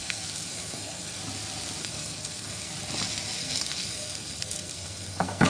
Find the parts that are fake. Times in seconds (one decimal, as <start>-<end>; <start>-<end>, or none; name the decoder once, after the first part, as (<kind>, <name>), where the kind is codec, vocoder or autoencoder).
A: 0.0-1.2 (codec, SNAC); 1.8-2.7; 3.4-5.5